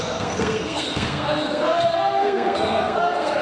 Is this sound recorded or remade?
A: remade